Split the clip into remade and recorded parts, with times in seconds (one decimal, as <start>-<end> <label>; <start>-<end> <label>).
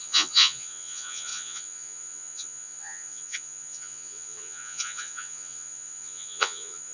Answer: 0.0-6.9 remade